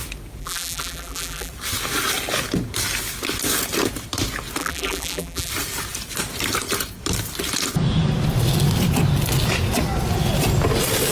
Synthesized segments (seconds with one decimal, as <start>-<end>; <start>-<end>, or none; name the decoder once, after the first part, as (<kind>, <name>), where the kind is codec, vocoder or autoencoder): 0.4-1.5 (vocoder, BigVGAN v2); 4.6-5.5